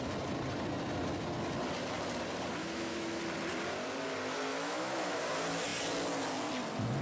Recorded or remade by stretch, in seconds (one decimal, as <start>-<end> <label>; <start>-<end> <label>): 0.0-2.6 recorded; 2.6-3.2 remade; 3.2-4.5 recorded; 4.5-5.2 remade; 5.2-7.0 recorded